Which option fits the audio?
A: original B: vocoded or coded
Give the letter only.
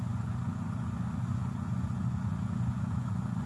B